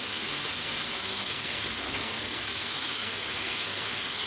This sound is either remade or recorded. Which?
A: remade